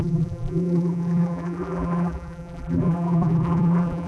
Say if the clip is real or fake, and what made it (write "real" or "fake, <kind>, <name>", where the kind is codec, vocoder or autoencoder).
fake, vocoder, BigVGAN v2